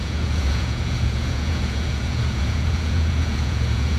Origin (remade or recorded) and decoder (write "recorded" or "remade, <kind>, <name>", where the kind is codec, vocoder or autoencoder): remade, vocoder, Vocos